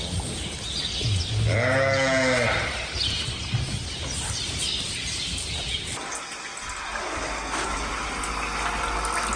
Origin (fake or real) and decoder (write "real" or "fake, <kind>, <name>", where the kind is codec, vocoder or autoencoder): real